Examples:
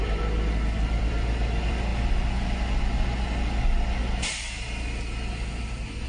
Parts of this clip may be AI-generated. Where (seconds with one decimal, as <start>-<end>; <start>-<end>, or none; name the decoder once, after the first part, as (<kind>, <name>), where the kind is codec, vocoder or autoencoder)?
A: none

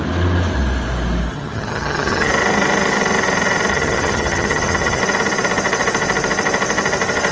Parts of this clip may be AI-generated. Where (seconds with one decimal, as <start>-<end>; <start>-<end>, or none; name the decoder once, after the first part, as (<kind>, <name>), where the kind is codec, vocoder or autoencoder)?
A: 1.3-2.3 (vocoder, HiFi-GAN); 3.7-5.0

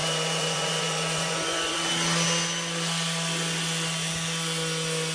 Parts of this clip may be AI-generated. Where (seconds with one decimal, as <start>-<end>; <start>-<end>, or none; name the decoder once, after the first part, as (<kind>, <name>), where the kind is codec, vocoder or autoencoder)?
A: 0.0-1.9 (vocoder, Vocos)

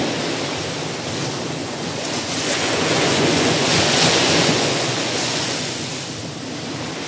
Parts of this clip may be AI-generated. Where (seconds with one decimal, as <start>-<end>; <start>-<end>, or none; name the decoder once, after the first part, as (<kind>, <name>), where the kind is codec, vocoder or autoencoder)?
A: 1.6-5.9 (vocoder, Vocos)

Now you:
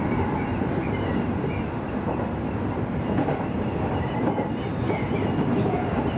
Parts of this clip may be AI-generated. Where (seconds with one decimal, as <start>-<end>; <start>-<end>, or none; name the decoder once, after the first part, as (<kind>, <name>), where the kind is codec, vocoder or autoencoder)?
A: none

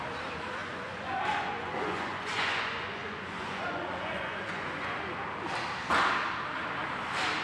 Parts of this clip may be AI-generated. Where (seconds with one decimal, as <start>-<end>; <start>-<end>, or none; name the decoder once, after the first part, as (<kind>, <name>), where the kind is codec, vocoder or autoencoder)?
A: 0.6-5.0 (vocoder, Vocos)

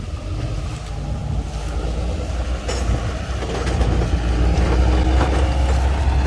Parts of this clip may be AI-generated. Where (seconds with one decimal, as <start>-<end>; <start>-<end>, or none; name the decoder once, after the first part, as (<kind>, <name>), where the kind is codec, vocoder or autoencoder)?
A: none

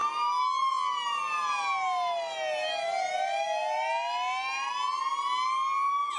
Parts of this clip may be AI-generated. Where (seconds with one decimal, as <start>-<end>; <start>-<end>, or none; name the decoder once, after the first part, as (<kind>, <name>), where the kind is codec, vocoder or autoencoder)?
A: none